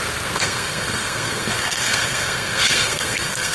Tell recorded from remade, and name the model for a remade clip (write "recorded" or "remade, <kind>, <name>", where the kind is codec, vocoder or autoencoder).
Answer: remade, codec, SNAC